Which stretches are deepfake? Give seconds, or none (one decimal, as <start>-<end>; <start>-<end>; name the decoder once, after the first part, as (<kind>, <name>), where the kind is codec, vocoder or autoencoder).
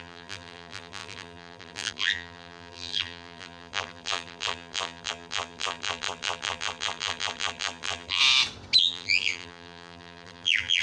0.0-8.2 (vocoder, BigVGAN v2); 8.8-10.8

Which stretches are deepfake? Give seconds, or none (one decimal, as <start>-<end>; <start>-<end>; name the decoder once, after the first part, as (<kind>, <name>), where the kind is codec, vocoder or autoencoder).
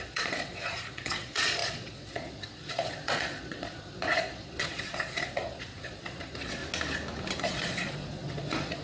0.0-6.6 (vocoder, Vocos); 7.4-8.8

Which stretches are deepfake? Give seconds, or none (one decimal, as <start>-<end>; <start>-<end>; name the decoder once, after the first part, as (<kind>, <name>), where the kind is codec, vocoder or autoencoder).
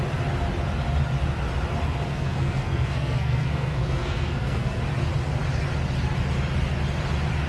2.1-4.8 (codec, SNAC)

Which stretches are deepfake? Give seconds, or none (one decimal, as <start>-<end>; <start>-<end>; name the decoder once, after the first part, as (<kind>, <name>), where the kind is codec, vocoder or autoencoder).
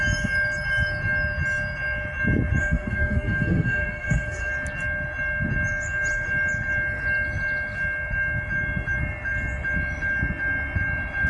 2.6-4.5 (codec, SNAC)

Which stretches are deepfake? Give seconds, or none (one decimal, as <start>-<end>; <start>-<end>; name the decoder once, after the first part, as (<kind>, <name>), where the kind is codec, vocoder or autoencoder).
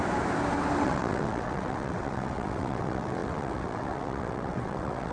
0.8-5.1 (vocoder, WaveNeXt)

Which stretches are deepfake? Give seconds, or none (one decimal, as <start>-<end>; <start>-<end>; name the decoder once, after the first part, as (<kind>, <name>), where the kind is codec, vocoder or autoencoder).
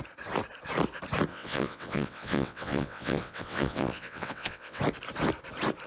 1.3-4.8 (vocoder, WaveNeXt)